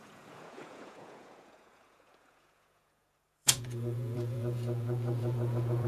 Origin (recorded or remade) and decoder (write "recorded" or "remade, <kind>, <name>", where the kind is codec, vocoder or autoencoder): remade, vocoder, Vocos